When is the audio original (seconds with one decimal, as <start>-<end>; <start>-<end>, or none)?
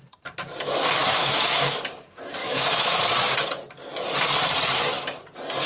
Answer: 0.0-1.0; 1.8-2.4; 3.0-5.7